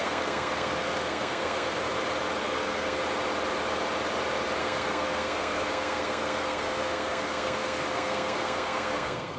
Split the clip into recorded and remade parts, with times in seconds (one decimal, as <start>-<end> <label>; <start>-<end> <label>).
0.0-1.8 remade; 1.8-2.4 recorded; 2.4-3.0 remade; 3.0-4.6 recorded; 4.6-9.4 remade